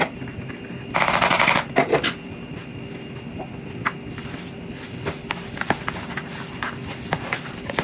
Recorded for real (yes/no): yes